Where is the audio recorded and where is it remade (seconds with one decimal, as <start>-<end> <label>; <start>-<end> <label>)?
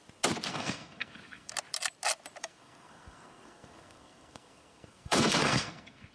0.0-0.5 recorded; 0.5-1.5 remade; 1.5-2.4 recorded; 2.4-6.1 remade